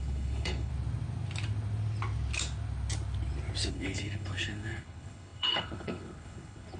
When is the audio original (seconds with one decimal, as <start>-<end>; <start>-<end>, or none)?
0.7-3.7

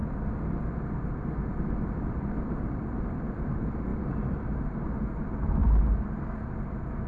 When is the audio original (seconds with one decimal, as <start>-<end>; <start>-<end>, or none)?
0.0-3.9; 5.0-5.6; 6.2-7.1

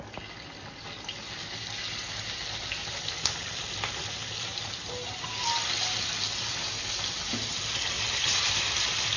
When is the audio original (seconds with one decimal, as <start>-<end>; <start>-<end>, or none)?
0.0-2.8; 3.7-9.2

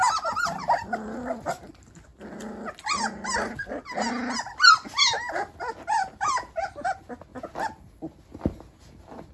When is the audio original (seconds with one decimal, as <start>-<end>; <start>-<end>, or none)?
0.0-9.3

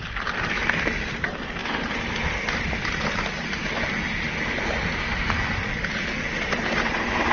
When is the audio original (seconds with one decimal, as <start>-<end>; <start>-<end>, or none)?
0.0-7.3

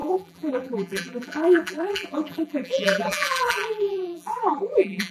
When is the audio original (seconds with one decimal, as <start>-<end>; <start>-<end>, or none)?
none